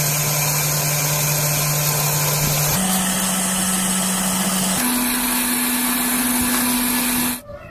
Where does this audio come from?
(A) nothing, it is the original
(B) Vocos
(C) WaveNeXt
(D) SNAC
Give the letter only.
A